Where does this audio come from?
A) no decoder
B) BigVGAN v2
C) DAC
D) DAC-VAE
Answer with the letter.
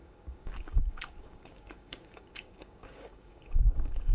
C